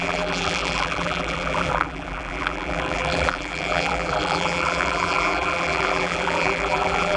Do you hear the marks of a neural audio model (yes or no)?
yes